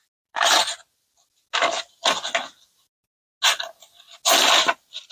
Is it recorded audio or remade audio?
recorded